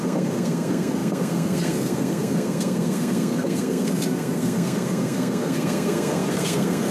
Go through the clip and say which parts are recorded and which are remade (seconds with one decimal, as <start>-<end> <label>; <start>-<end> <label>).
0.0-6.9 remade